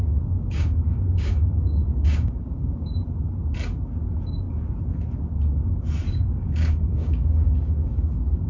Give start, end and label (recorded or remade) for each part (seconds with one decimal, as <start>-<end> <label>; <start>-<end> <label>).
0.0-2.9 remade; 2.9-6.1 recorded; 6.1-8.5 remade

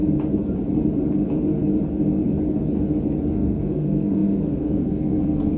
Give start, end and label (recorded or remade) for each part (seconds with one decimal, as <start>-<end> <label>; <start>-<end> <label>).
0.0-3.3 recorded; 3.3-5.6 remade

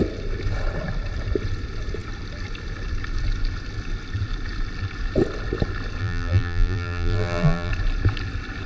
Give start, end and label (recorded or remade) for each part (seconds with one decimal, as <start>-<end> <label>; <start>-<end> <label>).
0.0-6.0 recorded; 6.0-7.7 remade; 7.7-8.7 recorded

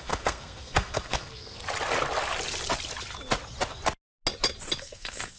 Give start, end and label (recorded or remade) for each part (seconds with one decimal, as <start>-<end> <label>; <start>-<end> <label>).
0.0-1.6 remade; 1.6-4.8 recorded; 4.8-5.4 remade

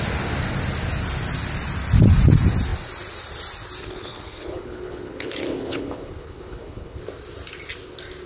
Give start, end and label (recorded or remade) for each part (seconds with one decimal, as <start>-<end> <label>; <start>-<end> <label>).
0.0-3.8 recorded; 3.8-7.0 remade; 7.0-8.3 recorded

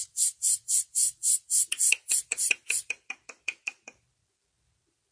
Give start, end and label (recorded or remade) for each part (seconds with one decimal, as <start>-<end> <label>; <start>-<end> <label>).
0.0-1.0 recorded; 1.0-4.1 remade; 4.1-5.1 recorded

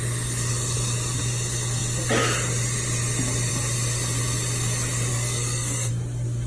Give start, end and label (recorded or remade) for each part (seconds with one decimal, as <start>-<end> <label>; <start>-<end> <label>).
0.0-5.1 recorded; 5.1-5.9 remade; 5.9-6.5 recorded